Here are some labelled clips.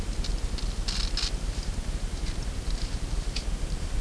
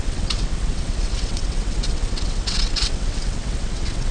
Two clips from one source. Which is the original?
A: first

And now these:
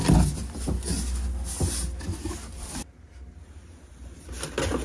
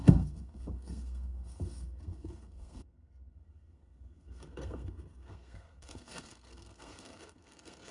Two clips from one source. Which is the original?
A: first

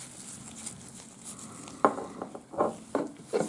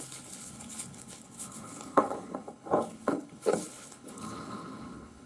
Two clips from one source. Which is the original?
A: first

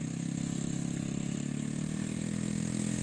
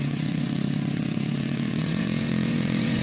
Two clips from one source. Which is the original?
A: first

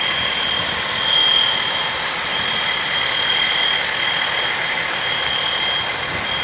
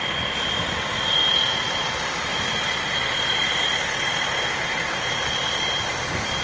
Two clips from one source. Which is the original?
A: second